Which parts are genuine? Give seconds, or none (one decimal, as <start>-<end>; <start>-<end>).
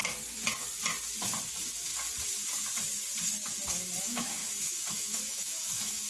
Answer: 0.0-1.5; 1.9-4.0